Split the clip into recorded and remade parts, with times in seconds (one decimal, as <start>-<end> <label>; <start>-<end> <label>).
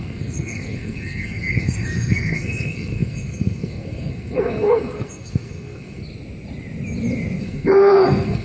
0.0-6.0 remade; 6.0-7.4 recorded; 7.4-8.4 remade